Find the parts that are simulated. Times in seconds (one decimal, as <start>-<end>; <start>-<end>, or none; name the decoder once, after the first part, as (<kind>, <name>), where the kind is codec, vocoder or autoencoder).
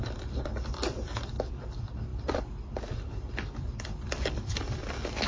0.0-5.3 (vocoder, BigVGAN v2)